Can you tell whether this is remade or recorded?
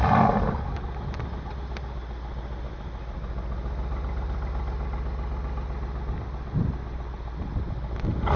recorded